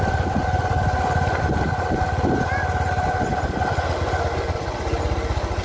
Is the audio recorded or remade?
recorded